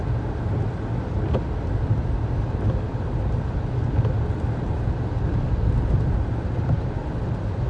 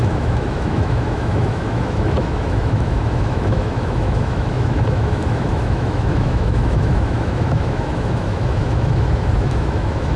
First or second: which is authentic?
first